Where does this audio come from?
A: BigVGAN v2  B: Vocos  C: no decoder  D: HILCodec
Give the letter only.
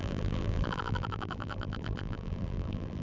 A